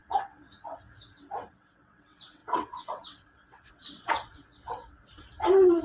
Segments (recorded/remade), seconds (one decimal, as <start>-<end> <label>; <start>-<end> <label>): 0.0-5.8 remade